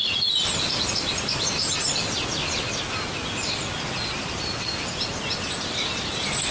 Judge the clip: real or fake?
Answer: real